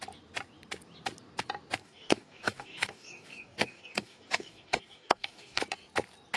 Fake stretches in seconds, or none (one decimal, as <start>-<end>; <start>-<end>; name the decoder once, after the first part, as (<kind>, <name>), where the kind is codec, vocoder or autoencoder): 1.8-5.6 (codec, DAC)